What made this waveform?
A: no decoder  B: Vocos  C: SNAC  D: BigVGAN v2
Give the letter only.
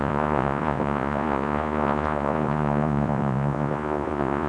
B